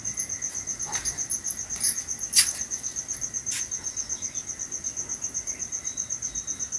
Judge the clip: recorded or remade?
recorded